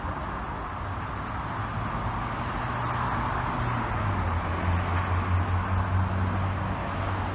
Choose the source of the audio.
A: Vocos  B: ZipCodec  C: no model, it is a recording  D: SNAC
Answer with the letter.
C